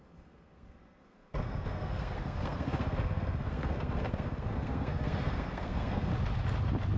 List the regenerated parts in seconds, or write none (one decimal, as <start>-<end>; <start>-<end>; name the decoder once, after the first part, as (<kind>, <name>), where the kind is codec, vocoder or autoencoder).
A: 0.0-6.1 (codec, SNAC)